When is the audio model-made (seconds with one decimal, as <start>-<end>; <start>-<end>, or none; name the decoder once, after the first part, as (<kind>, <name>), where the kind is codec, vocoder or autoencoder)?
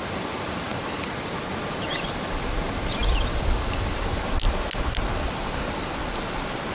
0.7-1.4 (vocoder, BigVGAN v2); 3.0-4.0